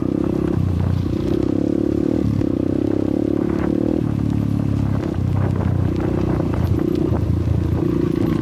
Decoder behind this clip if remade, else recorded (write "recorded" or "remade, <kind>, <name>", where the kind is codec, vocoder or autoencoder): recorded